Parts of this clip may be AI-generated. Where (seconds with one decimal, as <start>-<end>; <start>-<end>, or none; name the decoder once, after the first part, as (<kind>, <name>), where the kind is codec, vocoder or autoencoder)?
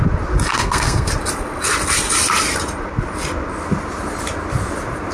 0.5-1.1 (codec, SNAC)